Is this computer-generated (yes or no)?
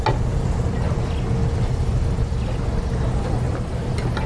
no